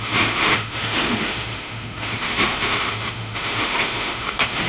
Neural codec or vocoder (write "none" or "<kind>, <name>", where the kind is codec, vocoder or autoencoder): autoencoder, DAC-VAE